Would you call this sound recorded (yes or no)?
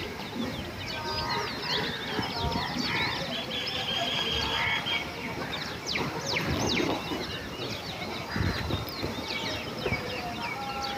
yes